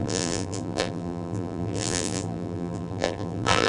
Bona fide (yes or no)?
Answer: no